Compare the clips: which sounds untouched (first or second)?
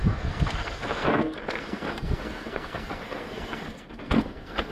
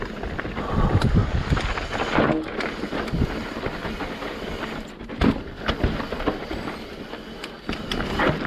second